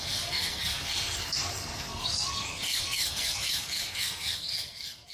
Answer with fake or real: fake